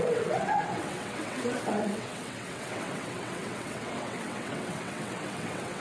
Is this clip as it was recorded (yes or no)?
no